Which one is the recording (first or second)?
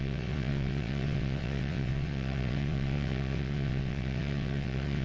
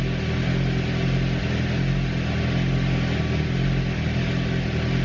second